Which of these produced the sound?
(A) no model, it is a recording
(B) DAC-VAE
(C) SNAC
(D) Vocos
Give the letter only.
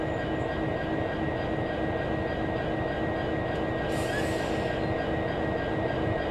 A